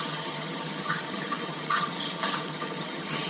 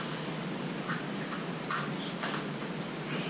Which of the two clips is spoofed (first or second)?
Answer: first